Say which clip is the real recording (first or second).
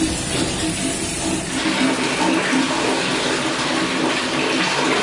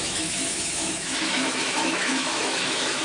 first